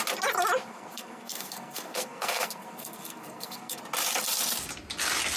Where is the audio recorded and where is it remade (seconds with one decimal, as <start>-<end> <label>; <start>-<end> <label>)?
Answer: 0.0-0.6 recorded; 0.6-3.8 remade; 3.8-5.4 recorded